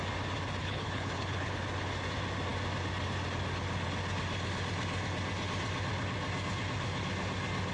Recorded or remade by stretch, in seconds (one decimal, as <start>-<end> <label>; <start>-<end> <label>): 0.0-0.6 recorded; 0.6-1.5 remade; 1.5-7.7 recorded